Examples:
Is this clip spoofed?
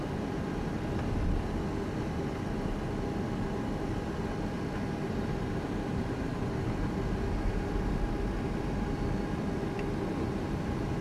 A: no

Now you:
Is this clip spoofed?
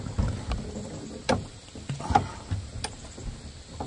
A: no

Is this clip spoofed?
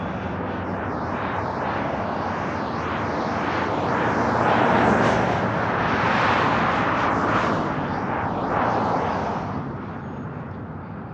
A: no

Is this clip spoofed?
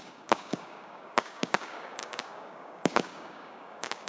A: yes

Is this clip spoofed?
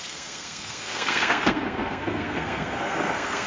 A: yes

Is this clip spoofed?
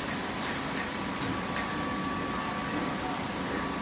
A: no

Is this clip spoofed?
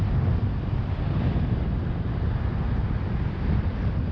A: no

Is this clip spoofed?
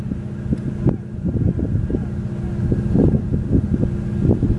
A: no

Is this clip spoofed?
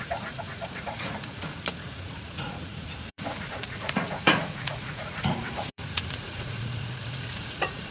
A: yes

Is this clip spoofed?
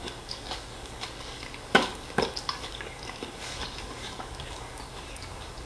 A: yes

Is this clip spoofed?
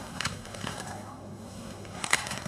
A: yes